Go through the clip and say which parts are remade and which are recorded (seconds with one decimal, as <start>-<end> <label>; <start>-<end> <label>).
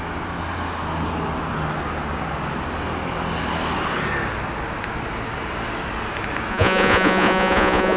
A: 0.0-6.5 recorded; 6.5-8.0 remade